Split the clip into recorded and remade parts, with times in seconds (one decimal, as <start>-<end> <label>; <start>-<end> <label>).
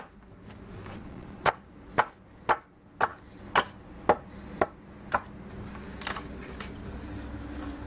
0.0-0.9 recorded; 0.9-1.5 remade; 1.5-7.9 recorded